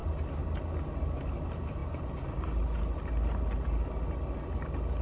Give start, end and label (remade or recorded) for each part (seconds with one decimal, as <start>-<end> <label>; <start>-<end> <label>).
0.0-5.0 recorded